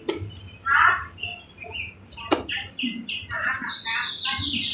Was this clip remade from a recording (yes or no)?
no